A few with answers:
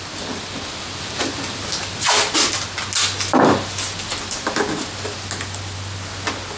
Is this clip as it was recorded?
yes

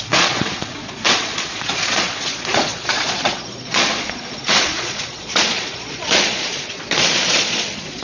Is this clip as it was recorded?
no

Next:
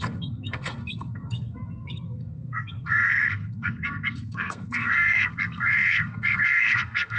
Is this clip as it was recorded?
no